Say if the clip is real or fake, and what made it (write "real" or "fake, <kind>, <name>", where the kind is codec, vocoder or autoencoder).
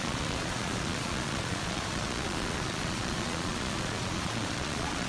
fake, vocoder, Vocos